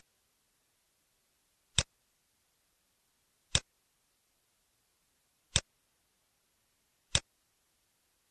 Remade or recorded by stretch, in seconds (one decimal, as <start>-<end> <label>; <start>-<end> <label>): 0.0-8.3 recorded